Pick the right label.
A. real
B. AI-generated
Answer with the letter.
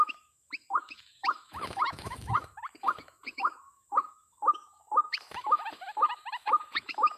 B